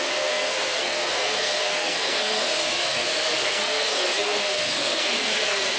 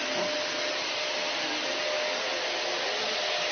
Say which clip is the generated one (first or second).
first